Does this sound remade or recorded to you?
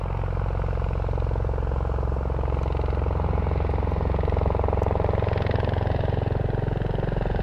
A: recorded